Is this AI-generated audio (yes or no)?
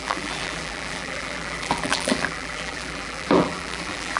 yes